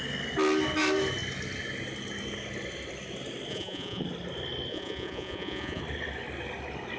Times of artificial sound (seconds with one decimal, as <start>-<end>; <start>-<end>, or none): 3.5-4.0; 4.7-5.8